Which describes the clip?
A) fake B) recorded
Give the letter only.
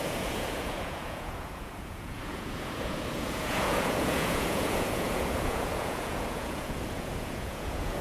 A